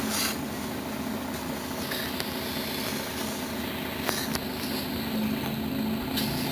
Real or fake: real